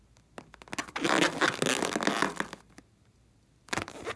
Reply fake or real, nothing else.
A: real